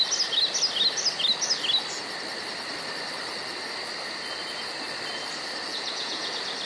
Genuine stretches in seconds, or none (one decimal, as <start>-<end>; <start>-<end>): 0.0-5.7; 6.3-6.7